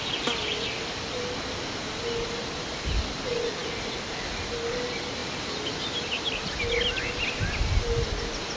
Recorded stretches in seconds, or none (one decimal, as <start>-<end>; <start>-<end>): 0.0-8.6